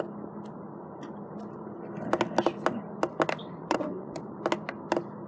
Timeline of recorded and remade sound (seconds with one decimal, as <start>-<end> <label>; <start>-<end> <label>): 0.0-3.4 recorded; 3.4-4.4 remade; 4.4-5.3 recorded